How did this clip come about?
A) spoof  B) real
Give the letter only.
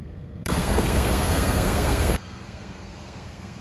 A